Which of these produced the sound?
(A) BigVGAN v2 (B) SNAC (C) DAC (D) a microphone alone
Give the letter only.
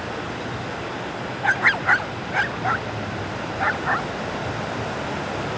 D